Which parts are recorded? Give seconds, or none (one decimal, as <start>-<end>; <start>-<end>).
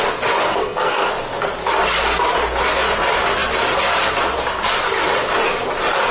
0.0-0.5; 1.1-6.1